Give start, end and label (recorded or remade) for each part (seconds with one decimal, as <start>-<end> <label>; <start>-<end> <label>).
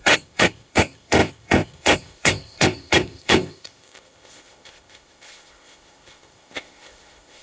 0.0-7.4 remade